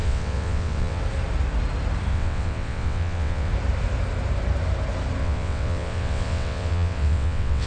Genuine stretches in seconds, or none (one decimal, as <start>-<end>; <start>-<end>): 1.0-2.1; 3.5-5.2